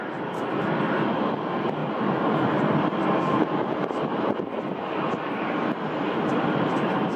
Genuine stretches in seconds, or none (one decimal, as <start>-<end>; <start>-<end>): 1.8-5.1